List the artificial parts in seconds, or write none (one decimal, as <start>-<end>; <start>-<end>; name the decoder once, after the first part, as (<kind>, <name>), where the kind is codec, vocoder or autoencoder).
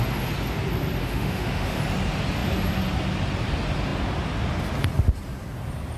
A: 1.0-1.8 (autoencoder, DAC-VAE)